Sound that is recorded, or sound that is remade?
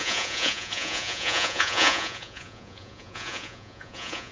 remade